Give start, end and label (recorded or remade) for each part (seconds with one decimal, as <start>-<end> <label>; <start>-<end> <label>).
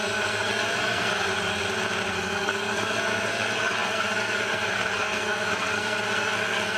0.0-1.3 remade; 1.3-2.1 recorded; 2.1-6.8 remade